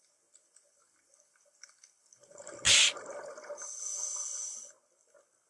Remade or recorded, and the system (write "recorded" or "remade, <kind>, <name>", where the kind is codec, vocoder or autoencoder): recorded